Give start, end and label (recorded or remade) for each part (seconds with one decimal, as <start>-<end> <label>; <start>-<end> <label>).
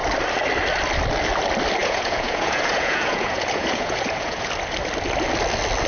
0.0-1.8 recorded; 1.8-4.5 remade; 4.5-5.9 recorded